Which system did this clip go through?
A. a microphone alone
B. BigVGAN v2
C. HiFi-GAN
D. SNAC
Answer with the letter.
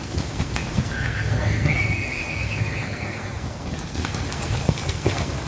D